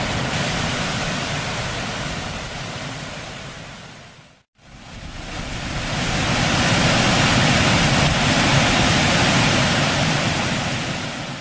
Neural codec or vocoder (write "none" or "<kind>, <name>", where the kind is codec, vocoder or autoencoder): none